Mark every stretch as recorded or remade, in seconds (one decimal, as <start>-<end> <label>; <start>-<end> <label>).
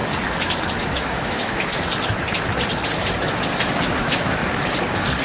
0.0-0.8 recorded; 0.8-1.7 remade; 1.7-4.0 recorded; 4.0-4.4 remade; 4.4-5.2 recorded